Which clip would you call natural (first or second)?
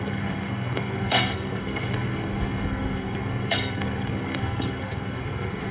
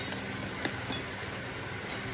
second